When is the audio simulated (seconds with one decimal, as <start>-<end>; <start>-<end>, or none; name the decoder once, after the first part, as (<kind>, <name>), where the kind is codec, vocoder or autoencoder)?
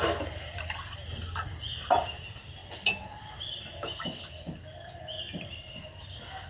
none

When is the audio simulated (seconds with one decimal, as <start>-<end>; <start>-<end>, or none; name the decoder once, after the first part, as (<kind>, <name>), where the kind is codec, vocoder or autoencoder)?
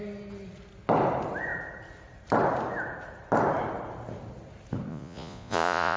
4.9-6.0 (vocoder, Vocos)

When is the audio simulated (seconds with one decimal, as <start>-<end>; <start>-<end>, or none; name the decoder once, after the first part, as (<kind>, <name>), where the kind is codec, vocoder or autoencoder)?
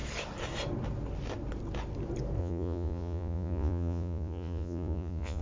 2.4-5.4 (vocoder, Vocos)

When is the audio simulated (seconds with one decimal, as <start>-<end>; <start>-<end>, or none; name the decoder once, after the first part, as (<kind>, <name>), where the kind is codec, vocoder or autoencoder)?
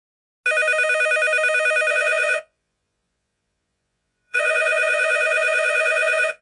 1.9-6.4 (vocoder, Vocos)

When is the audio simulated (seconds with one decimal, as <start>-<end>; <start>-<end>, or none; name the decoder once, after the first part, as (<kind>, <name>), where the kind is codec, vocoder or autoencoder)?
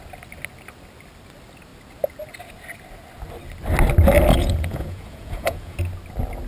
4.3-5.8 (vocoder, Vocos)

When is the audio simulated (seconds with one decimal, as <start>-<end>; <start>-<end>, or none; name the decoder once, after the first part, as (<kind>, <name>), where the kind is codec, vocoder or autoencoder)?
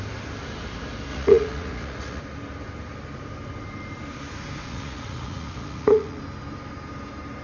1.1-2.2 (vocoder, Vocos); 4.6-6.2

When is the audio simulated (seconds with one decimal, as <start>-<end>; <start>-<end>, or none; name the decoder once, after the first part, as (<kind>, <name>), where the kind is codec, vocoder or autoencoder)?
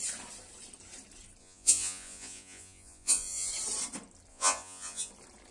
1.4-3.5 (vocoder, Vocos); 4.3-5.1